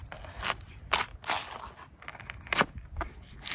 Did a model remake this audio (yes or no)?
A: no